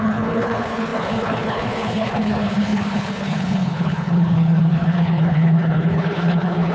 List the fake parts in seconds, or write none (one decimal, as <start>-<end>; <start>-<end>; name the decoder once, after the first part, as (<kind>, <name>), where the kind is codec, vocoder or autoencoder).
0.0-6.7 (codec, HILCodec)